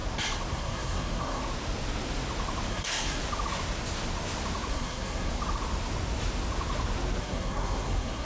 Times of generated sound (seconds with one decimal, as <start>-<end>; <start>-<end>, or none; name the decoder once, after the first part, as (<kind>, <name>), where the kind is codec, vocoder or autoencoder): 0.5-1.4 (codec, SNAC); 2.7-3.2; 4.7-5.3; 7.2-8.2